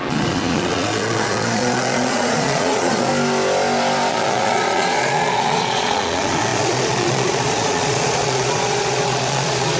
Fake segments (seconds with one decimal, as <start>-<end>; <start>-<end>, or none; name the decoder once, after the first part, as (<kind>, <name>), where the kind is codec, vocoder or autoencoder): 0.0-3.1 (vocoder, Vocos); 4.1-9.8